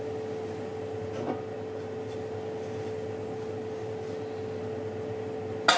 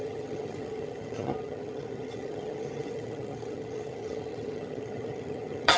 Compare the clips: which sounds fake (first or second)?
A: second